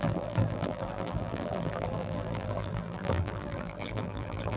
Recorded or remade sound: remade